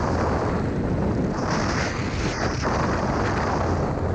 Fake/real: real